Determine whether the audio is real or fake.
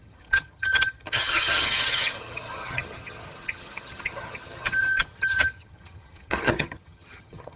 fake